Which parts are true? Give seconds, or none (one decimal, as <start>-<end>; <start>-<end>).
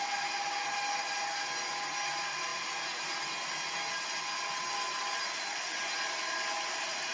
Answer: 0.0-7.1